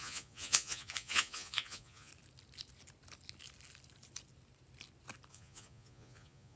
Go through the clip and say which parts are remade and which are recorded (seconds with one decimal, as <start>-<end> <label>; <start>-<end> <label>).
0.0-2.1 remade; 2.1-5.3 recorded; 5.3-6.6 remade